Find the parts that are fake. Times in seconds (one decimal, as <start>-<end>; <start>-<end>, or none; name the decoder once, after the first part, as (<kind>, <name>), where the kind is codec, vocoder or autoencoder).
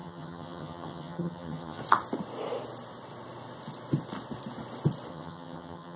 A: 0.0-1.8 (vocoder, HiFi-GAN); 5.1-6.0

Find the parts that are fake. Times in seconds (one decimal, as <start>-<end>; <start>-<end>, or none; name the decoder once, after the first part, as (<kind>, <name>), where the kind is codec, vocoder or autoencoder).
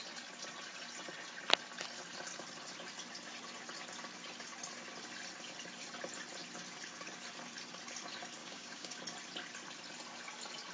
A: 8.4-9.0 (codec, DAC)